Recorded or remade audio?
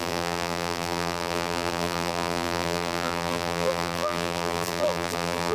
remade